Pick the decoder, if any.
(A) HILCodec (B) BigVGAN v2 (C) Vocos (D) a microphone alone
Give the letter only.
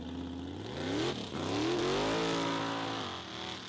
D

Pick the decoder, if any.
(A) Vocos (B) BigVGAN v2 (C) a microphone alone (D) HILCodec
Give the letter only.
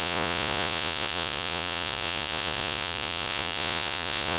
A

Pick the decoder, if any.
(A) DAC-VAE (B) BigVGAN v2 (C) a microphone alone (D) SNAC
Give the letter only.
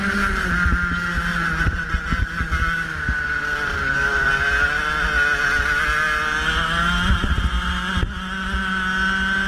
C